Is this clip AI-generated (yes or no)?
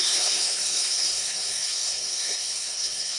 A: yes